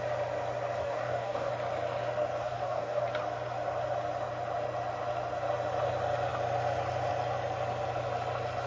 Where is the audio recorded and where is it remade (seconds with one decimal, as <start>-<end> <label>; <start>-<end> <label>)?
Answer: 0.0-0.8 recorded; 0.8-1.5 remade; 1.5-2.4 recorded; 2.4-3.0 remade; 3.0-8.7 recorded